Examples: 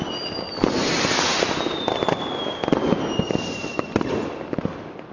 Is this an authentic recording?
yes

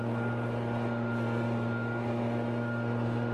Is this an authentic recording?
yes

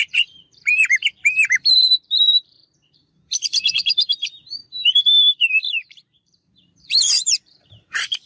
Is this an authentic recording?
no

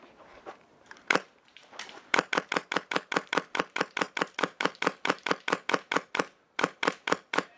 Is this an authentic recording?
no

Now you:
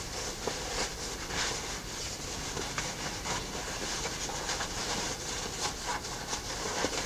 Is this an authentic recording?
yes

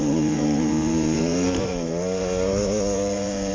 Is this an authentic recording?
no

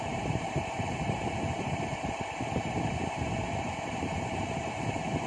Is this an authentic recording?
no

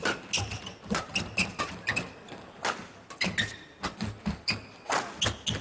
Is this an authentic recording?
yes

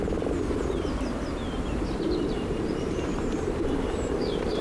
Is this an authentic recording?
no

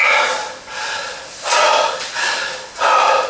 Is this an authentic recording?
yes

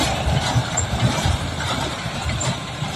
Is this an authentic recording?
no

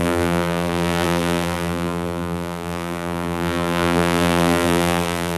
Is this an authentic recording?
no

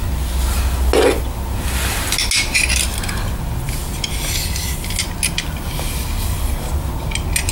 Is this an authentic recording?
yes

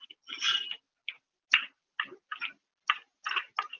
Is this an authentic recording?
yes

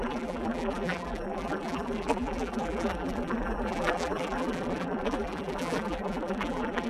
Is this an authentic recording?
no